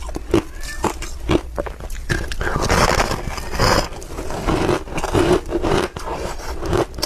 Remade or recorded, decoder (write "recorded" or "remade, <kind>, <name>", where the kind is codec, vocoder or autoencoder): recorded